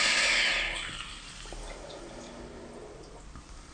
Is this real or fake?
real